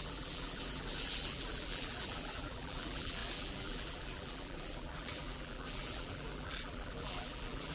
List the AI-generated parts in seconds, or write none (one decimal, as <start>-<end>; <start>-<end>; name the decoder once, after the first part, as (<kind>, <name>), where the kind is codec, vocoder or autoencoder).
0.0-7.7 (vocoder, BigVGAN v2)